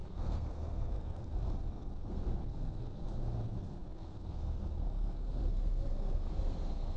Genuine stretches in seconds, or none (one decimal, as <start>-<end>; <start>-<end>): none

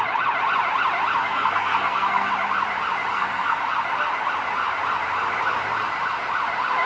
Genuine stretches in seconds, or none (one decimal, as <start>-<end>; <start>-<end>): 0.0-1.2; 2.3-3.1; 3.6-6.9